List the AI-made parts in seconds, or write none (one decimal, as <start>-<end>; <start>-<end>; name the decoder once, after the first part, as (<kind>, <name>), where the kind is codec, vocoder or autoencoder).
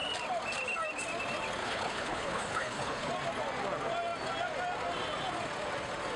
1.6-3.1 (codec, HILCodec)